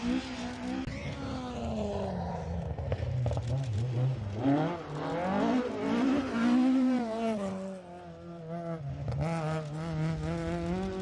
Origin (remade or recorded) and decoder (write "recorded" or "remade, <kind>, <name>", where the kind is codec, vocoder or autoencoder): recorded